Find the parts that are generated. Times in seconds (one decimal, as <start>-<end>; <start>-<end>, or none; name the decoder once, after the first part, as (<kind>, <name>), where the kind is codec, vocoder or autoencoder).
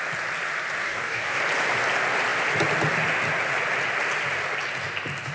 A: 0.8-1.4 (codec, DAC)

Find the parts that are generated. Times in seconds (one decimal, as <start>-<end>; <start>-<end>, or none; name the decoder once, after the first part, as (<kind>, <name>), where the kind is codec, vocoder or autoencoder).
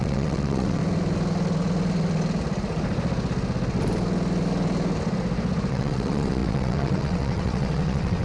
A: 0.0-0.8 (vocoder, WaveNeXt); 5.7-8.2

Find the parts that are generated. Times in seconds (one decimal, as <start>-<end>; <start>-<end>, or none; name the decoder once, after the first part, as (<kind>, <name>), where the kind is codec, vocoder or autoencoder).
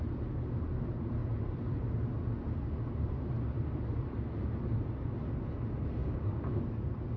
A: 6.0-6.6 (codec, DAC)